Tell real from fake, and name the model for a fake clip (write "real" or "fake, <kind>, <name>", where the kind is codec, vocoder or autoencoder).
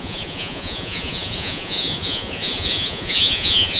fake, vocoder, Vocos